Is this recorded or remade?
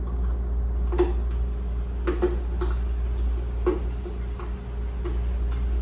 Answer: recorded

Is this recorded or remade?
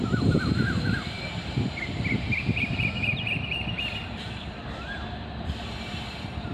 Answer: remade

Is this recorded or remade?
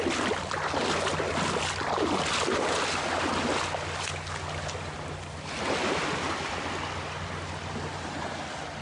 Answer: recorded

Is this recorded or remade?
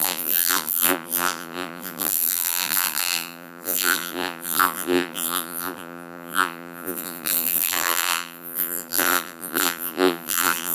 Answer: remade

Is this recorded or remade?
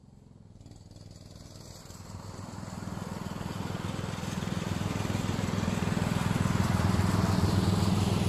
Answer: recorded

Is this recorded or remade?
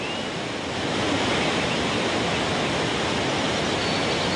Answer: recorded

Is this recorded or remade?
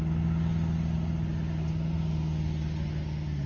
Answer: recorded